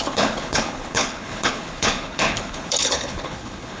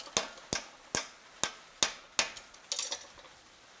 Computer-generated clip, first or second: first